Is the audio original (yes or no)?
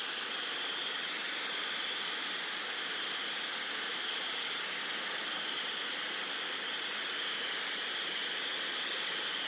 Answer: yes